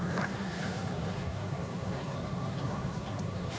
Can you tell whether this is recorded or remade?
remade